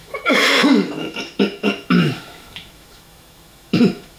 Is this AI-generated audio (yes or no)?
yes